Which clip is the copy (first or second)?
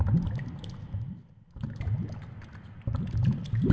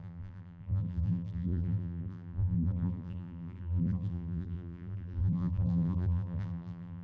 second